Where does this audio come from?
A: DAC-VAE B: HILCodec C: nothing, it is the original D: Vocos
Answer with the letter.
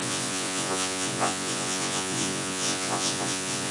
D